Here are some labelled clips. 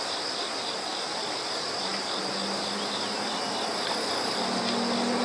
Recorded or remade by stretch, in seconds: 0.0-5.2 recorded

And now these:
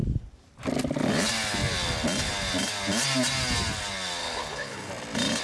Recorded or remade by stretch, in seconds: 0.0-4.2 recorded; 4.2-4.9 remade; 4.9-5.4 recorded

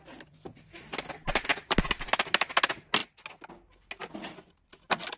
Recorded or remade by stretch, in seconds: 0.0-5.2 recorded

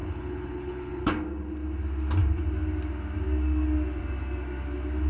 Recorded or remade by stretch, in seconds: 0.0-1.0 remade; 1.0-5.1 recorded

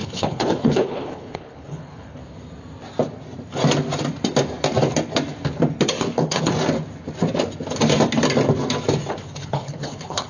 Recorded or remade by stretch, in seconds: 0.0-2.2 remade; 2.2-6.0 recorded; 6.0-6.5 remade; 6.5-9.1 recorded; 9.1-10.3 remade

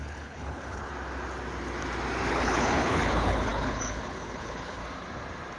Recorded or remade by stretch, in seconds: 0.0-0.9 remade; 0.9-2.3 recorded; 2.3-4.8 remade; 4.8-5.6 recorded

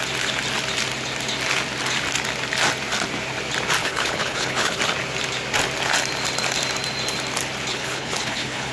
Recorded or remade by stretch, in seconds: 0.0-3.8 recorded; 3.8-4.8 remade; 4.8-7.7 recorded; 7.7-8.7 remade